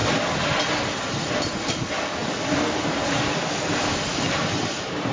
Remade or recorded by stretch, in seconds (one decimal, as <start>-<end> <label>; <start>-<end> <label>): 0.0-1.6 recorded; 1.6-5.1 remade